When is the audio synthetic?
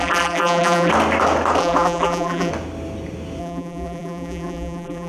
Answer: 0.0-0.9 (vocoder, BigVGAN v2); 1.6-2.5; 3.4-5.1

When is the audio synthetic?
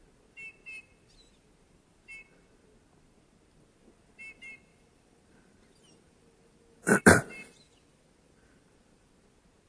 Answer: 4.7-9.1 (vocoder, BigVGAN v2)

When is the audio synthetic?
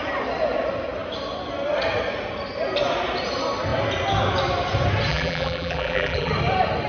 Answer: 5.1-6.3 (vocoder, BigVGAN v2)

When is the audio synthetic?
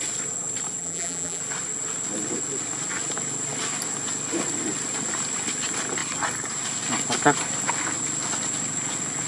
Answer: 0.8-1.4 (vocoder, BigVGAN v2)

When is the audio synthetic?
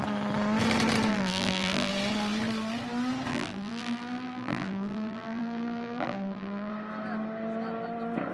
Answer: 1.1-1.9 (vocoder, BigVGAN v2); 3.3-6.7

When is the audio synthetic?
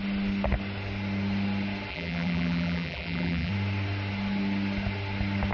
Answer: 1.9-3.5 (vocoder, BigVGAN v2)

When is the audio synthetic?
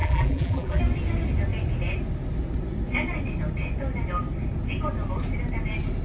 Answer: 0.0-0.8 (vocoder, BigVGAN v2)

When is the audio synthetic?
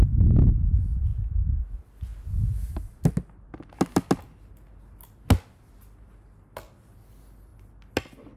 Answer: none